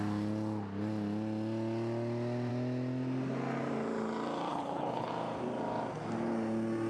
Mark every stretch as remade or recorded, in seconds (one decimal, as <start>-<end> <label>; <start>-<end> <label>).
0.0-4.5 recorded; 4.5-5.1 remade; 5.1-6.9 recorded